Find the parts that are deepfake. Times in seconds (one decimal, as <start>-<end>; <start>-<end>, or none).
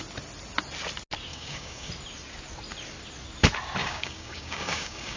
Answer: 1.3-1.9; 3.8-5.2